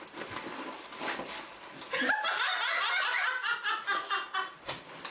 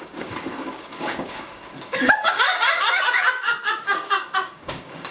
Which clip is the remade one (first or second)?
second